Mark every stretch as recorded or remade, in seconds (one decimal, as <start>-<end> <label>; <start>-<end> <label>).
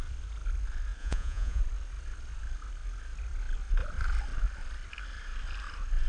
0.0-1.0 recorded; 1.0-1.6 remade; 1.6-6.1 recorded